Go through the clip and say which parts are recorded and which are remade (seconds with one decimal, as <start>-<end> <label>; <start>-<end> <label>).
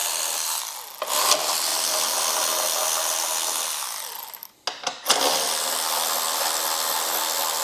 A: 0.0-7.6 recorded